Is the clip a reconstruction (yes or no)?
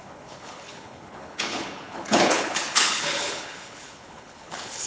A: yes